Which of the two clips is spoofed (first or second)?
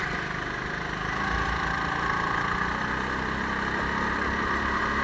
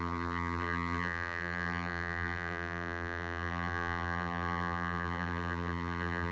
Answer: second